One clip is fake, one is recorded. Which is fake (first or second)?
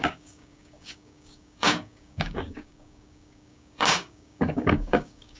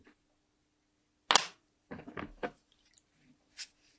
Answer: first